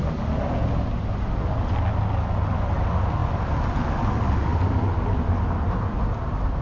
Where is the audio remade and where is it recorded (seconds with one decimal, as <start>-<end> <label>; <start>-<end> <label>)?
0.0-6.6 recorded